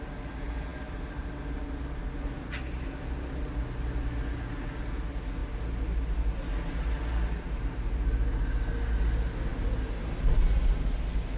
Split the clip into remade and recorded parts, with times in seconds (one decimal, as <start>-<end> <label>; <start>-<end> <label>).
0.0-11.4 recorded